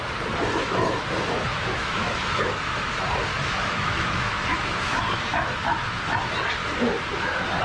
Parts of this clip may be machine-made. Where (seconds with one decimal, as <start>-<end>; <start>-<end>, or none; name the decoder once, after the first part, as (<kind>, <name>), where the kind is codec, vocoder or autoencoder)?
1.5-2.9 (autoencoder, DAC-VAE); 3.3-6.0